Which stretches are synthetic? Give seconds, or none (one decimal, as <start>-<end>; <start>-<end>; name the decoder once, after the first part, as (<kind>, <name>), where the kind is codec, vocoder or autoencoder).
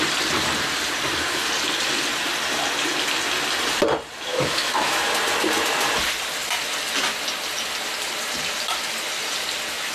4.3-5.0 (autoencoder, DAC-VAE)